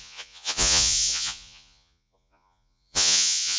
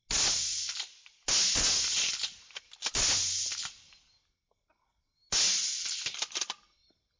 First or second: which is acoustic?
second